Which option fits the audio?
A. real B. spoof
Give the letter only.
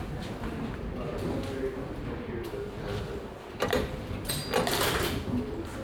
A